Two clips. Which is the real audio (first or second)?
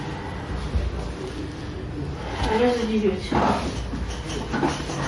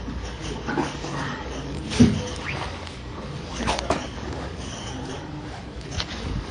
first